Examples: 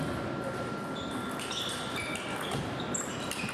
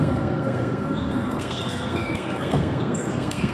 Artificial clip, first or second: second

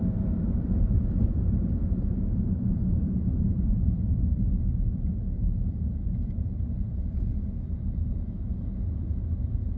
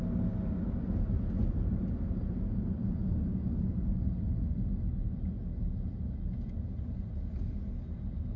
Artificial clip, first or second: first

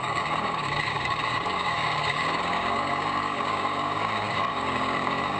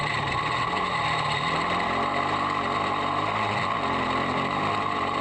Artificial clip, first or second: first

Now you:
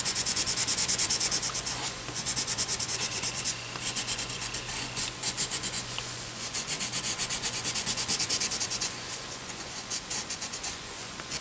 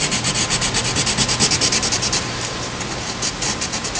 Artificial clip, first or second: first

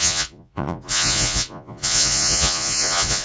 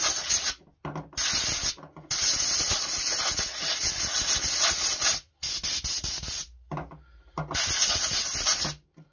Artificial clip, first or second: first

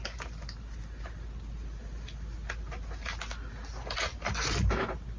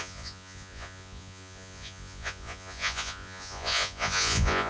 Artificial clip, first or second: second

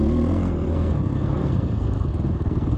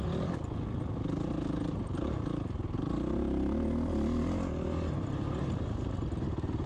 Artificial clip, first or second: first